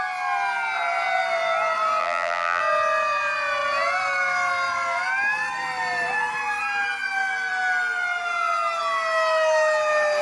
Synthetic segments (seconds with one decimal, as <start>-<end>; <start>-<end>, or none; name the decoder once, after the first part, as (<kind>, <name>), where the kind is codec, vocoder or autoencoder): 2.0-2.6 (vocoder, BigVGAN v2)